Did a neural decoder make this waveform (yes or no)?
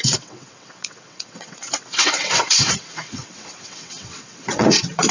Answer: yes